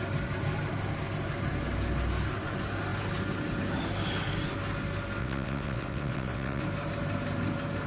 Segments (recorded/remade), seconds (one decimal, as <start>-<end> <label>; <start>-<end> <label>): 0.0-5.2 recorded; 5.2-6.6 remade; 6.6-7.9 recorded